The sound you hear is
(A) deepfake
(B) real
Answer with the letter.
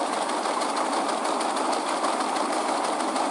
B